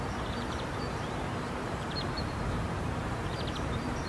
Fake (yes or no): yes